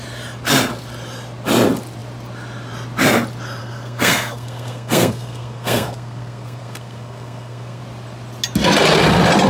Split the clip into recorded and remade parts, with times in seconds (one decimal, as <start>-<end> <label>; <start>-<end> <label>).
0.0-3.6 recorded; 3.6-7.8 remade; 7.8-9.5 recorded